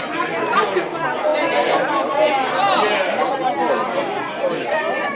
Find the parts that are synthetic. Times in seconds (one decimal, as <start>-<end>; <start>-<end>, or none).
none